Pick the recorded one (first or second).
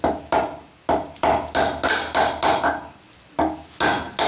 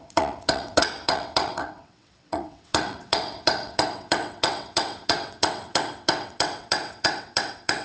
first